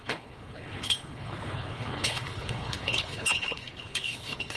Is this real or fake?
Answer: fake